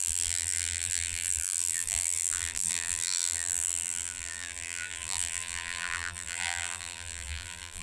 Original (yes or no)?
no